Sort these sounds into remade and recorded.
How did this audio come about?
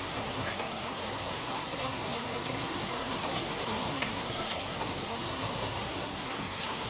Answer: remade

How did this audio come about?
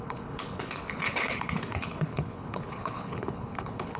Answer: remade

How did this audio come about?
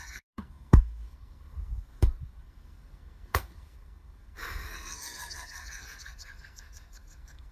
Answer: remade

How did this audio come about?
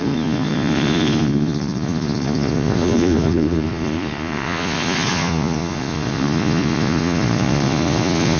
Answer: remade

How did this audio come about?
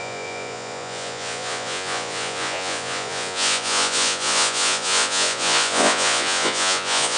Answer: remade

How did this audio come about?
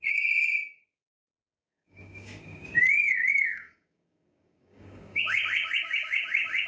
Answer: remade